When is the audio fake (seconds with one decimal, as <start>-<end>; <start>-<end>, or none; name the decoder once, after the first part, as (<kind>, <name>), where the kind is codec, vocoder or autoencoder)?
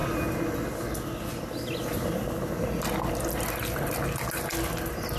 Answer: none